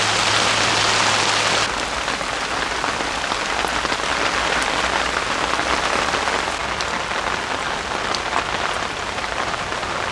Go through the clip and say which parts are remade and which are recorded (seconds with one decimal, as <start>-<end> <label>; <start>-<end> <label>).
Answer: 0.0-10.1 recorded